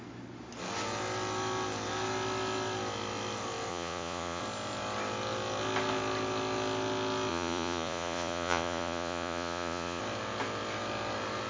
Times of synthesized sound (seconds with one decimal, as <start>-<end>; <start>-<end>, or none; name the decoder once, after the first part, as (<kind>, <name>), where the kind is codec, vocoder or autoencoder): 3.7-4.4 (vocoder, Vocos); 7.3-10.0